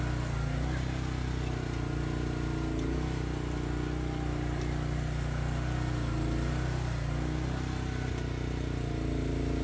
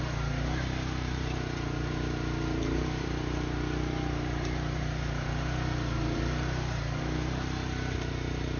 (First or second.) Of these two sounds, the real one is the first